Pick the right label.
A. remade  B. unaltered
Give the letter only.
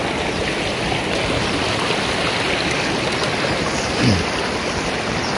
B